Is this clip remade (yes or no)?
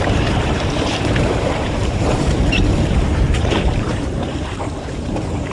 yes